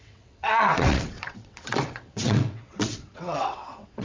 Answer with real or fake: fake